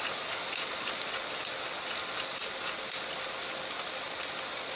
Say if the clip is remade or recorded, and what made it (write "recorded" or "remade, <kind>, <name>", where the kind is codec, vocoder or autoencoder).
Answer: recorded